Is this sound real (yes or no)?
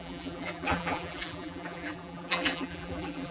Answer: no